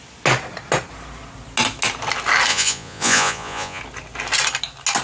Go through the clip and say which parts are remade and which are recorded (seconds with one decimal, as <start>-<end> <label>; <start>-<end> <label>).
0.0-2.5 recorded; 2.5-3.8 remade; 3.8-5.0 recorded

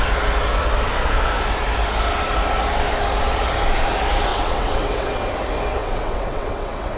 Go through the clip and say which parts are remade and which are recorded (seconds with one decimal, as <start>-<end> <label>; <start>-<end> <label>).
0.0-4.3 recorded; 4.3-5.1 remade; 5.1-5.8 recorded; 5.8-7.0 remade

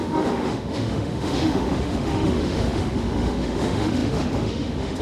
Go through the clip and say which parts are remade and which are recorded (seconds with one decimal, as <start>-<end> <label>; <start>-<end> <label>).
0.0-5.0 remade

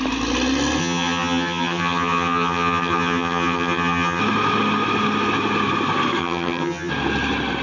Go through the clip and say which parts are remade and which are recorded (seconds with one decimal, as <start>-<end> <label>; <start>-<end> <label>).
0.0-0.8 recorded; 0.8-4.2 remade; 4.2-6.2 recorded; 6.2-6.9 remade; 6.9-7.6 recorded

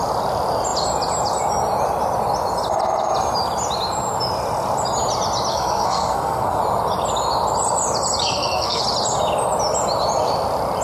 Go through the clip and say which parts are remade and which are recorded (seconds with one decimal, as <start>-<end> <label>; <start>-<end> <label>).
0.0-5.5 recorded; 5.5-6.6 remade; 6.6-8.2 recorded; 8.2-8.8 remade; 8.8-10.8 recorded

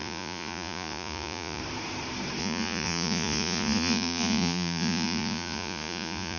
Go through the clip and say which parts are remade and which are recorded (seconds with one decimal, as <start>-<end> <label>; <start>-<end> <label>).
0.0-1.6 remade; 1.6-2.4 recorded; 2.4-6.4 remade